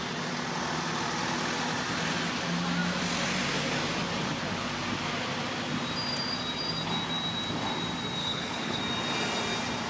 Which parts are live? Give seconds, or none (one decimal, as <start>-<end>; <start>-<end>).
0.0-8.2; 8.8-9.9